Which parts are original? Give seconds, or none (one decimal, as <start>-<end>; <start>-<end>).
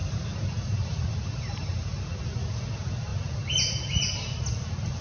2.0-5.0